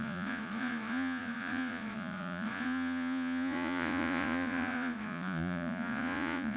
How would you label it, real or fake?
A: fake